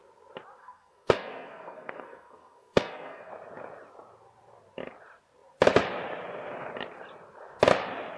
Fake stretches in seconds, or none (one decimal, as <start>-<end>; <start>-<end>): 0.6-3.3